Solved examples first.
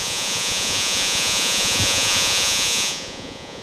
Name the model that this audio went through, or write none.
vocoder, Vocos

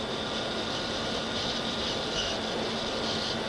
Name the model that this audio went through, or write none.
none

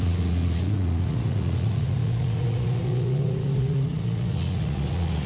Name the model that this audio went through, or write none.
vocoder, Vocos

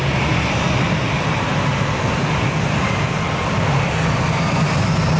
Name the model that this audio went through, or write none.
none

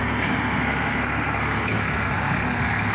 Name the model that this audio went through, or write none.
codec, SNAC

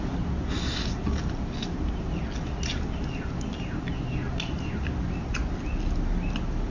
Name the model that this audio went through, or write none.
none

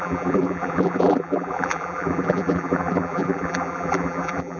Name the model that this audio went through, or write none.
vocoder, BigVGAN v2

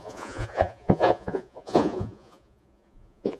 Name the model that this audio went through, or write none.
vocoder, Vocos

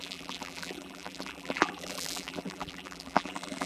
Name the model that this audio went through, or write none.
vocoder, BigVGAN v2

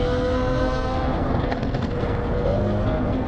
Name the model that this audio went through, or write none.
codec, SNAC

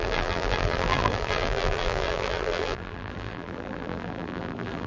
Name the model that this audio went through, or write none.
vocoder, BigVGAN v2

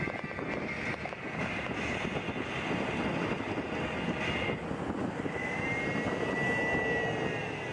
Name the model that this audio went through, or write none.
none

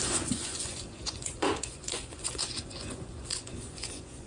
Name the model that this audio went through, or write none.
vocoder, Vocos